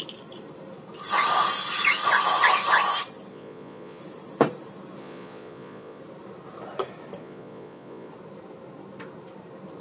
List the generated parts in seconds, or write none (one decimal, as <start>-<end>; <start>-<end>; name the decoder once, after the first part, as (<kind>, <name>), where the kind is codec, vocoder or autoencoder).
3.3-4.0 (vocoder, Vocos); 5.0-6.0; 7.2-8.1

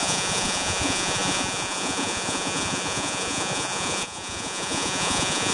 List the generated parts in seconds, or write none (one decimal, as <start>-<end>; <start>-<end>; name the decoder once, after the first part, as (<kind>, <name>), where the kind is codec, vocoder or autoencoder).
0.0-5.5 (vocoder, Vocos)